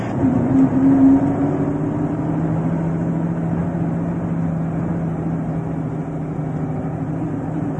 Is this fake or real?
real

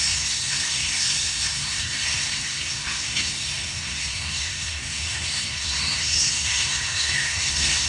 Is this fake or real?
fake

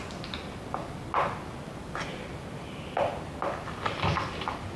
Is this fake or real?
real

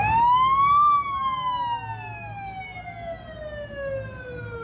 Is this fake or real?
real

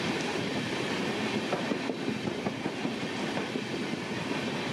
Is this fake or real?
real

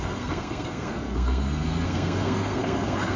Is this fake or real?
fake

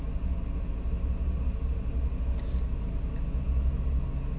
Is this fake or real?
real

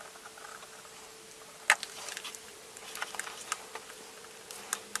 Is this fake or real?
real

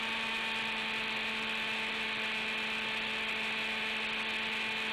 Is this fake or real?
real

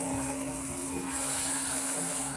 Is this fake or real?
fake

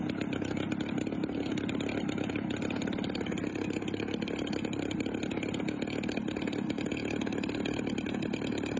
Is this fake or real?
real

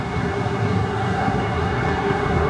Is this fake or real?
fake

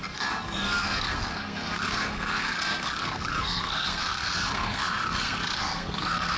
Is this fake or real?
fake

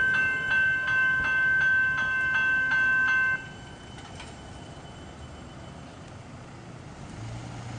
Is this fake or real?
real